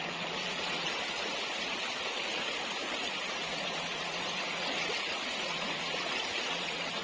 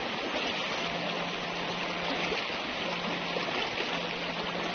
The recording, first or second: second